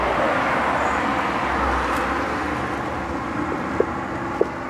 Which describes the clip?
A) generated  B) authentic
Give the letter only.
B